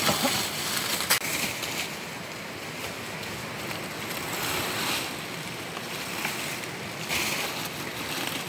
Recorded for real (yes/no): yes